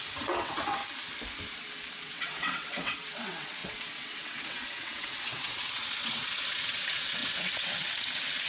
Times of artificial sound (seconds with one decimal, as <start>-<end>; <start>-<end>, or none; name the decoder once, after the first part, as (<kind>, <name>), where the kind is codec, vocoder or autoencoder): 0.0-0.8 (vocoder, WaveNeXt); 2.0-8.5